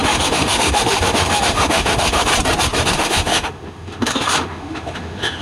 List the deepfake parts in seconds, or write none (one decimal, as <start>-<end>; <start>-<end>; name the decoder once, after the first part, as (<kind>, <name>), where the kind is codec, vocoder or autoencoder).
0.0-2.3 (autoencoder, DAC-VAE); 2.9-5.4